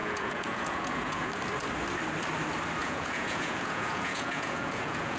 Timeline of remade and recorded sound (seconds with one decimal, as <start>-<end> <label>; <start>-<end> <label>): 0.0-1.3 remade; 1.3-2.8 recorded; 2.8-5.2 remade